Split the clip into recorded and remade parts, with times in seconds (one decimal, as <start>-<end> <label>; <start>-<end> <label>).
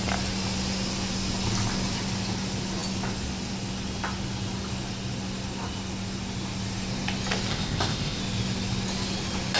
0.0-7.5 recorded; 7.5-8.2 remade; 8.2-9.6 recorded